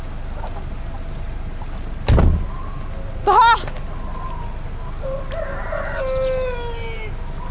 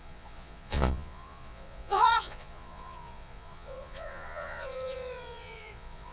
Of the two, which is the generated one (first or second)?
second